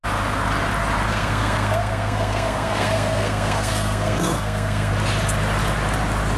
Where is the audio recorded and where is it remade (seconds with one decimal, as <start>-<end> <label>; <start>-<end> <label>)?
0.0-1.1 recorded; 1.1-4.9 remade; 4.9-6.4 recorded